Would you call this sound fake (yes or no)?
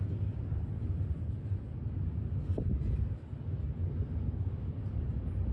no